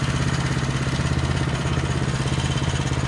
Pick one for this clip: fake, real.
real